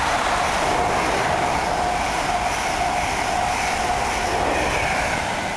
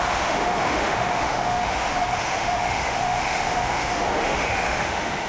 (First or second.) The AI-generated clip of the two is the second